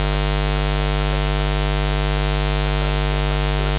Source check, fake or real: real